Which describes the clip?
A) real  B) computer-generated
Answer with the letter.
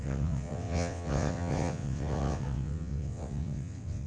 B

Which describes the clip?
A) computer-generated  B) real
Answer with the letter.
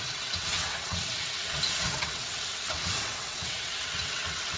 A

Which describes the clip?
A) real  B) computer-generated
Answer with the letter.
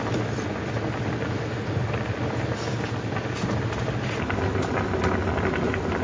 A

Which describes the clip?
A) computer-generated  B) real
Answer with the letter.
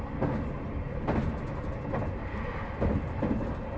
B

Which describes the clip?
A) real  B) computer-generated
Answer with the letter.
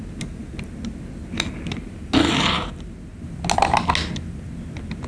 A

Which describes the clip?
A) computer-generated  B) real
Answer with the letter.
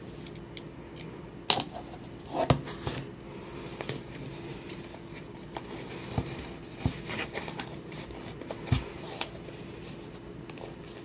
B